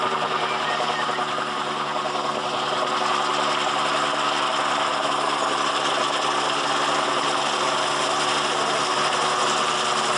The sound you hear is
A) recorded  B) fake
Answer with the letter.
A